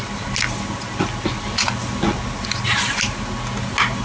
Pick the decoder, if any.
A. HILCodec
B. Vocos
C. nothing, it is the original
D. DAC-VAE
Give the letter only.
C